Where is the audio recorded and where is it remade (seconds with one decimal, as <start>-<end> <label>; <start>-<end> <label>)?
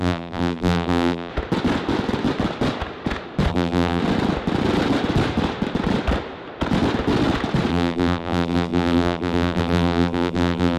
0.0-1.3 remade; 1.3-3.5 recorded; 3.5-4.0 remade; 4.0-7.7 recorded; 7.7-10.8 remade